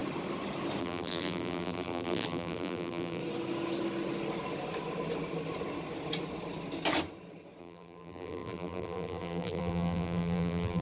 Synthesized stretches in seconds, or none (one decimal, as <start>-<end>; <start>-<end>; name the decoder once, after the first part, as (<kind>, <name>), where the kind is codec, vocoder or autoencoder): 0.8-3.2 (vocoder, BigVGAN v2); 7.6-10.8